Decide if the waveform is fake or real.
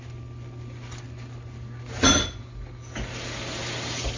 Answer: real